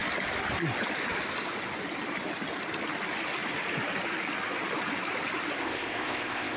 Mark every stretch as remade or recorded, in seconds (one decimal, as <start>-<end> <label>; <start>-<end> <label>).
0.0-5.6 recorded; 5.6-6.6 remade